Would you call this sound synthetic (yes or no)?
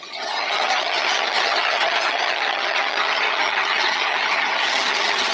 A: yes